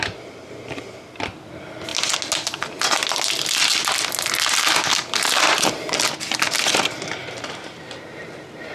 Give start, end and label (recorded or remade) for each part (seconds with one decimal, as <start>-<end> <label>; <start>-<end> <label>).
0.0-7.2 recorded; 7.2-7.7 remade; 7.7-8.7 recorded